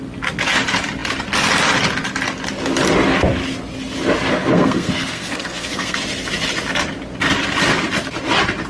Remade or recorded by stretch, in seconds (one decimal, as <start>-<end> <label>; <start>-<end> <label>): 0.0-4.3 recorded; 4.3-6.0 remade; 6.0-8.7 recorded

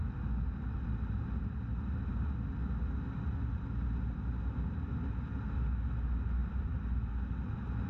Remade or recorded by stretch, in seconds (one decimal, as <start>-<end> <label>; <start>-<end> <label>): 0.0-6.4 recorded; 6.4-7.1 remade; 7.1-7.9 recorded

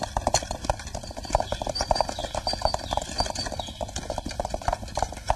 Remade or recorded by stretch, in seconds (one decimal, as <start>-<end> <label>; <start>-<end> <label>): 0.0-2.2 remade; 2.2-2.7 recorded; 2.7-5.4 remade

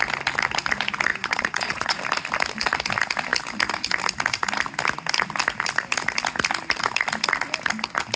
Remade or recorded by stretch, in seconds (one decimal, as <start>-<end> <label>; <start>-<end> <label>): 0.0-1.1 recorded; 1.1-2.0 remade; 2.0-8.2 recorded

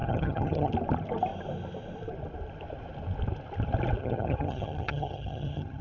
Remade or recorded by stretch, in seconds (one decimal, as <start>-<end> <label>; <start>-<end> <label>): 0.0-0.7 remade; 0.7-4.0 recorded; 4.0-5.8 remade

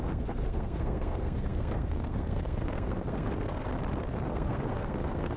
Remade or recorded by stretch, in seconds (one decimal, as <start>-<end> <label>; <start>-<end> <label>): 0.0-3.7 remade; 3.7-4.3 recorded; 4.3-5.4 remade

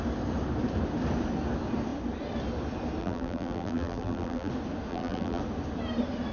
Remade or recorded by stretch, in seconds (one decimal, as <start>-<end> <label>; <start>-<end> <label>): 0.0-3.0 recorded; 3.0-4.5 remade; 4.5-4.9 recorded; 4.9-5.4 remade; 5.4-6.3 recorded

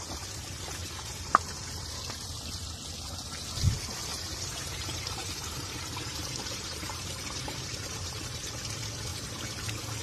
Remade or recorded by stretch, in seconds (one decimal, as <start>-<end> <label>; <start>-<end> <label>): 0.0-4.1 recorded; 4.1-8.5 remade; 8.5-10.0 recorded